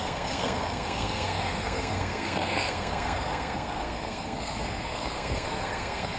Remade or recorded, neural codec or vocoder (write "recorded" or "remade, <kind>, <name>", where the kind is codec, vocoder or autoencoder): remade, codec, SNAC